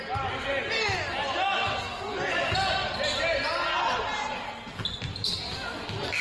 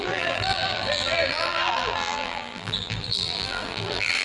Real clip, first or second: first